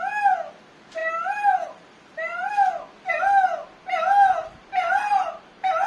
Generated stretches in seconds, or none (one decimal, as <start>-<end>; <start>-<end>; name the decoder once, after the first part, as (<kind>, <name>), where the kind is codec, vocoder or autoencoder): 1.0-2.5 (vocoder, BigVGAN v2); 4.4-5.9